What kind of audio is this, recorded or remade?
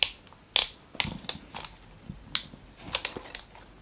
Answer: recorded